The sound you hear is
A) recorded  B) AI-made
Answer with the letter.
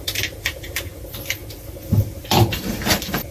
B